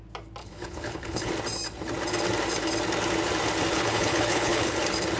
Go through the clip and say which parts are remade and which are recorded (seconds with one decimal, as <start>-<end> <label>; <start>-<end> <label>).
0.0-0.4 recorded; 0.4-1.3 remade; 1.3-3.7 recorded; 3.7-4.8 remade; 4.8-5.2 recorded